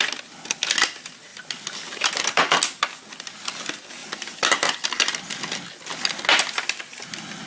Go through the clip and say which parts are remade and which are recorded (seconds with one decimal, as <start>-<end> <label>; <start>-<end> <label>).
0.0-7.5 recorded